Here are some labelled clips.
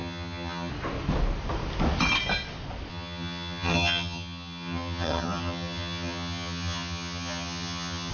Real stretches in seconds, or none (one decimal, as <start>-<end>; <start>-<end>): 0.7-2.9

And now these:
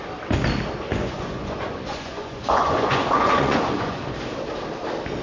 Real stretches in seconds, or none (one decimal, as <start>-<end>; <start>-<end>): 0.0-0.9; 4.0-5.2

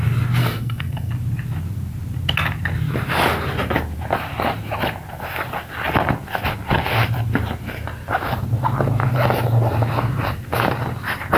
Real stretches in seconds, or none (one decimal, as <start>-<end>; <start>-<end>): 0.0-0.4; 1.1-11.4

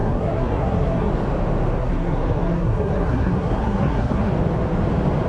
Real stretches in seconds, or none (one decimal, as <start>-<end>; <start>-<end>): 1.1-1.8; 4.3-5.3

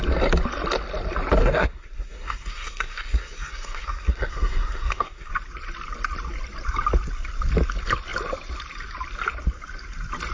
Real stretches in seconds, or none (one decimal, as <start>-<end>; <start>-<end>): 0.0-1.4; 5.3-10.3

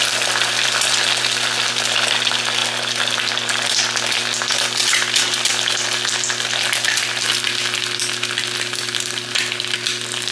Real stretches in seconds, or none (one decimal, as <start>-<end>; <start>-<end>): 0.0-10.3

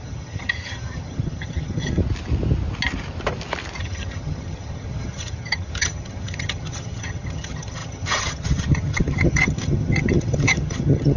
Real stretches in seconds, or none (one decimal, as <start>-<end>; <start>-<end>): 2.0-3.8

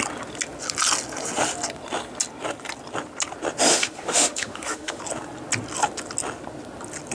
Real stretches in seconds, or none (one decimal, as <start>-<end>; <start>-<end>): 0.0-3.7; 5.0-7.1